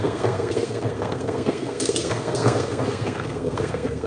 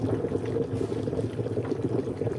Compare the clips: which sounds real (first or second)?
second